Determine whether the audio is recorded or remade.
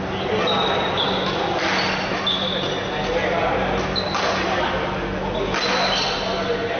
recorded